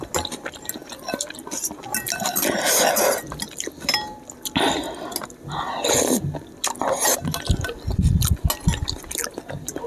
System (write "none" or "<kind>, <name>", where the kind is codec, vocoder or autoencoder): none